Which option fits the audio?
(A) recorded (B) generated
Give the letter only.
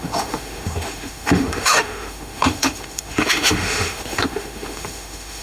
B